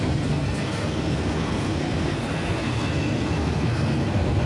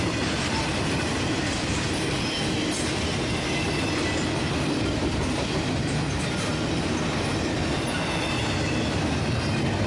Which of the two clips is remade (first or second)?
first